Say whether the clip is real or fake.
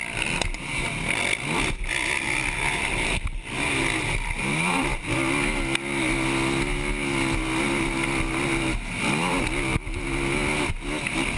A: real